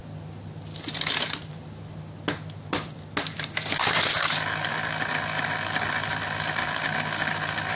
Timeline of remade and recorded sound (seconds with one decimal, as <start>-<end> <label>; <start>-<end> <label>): 0.0-7.8 recorded